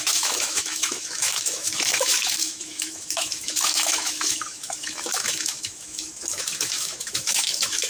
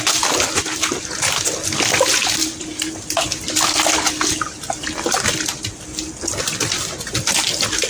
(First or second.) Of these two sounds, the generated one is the first